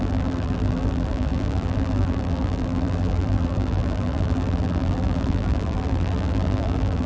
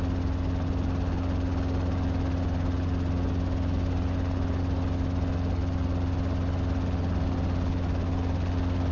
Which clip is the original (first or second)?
second